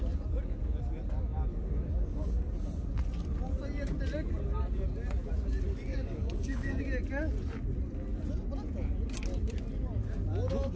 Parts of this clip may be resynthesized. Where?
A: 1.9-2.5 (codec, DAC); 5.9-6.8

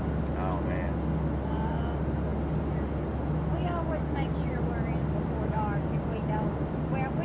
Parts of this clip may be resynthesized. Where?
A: none

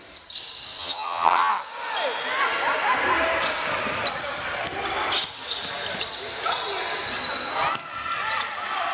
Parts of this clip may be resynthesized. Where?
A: 0.8-1.5 (vocoder, HiFi-GAN)

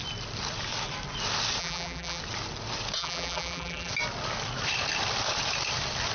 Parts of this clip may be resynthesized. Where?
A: 1.6-2.2 (vocoder, BigVGAN v2); 3.0-3.9

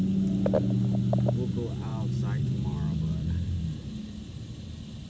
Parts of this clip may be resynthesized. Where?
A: 1.9-5.1 (vocoder, BigVGAN v2)

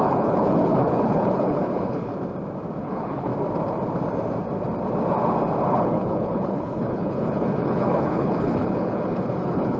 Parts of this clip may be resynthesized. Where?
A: 0.0-2.1 (codec, HILCodec); 2.8-3.3; 5.7-9.8

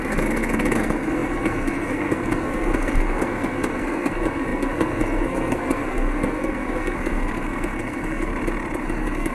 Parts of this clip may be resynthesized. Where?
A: 0.0-8.3 (codec, SNAC); 8.8-9.3

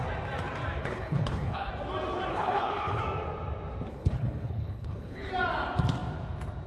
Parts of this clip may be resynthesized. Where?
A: 0.8-1.7 (codec, HILCodec); 2.3-3.0; 3.9-5.3